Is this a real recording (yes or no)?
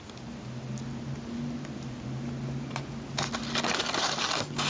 yes